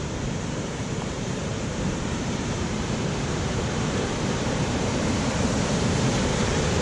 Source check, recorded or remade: remade